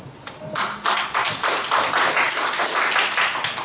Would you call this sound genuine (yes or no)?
yes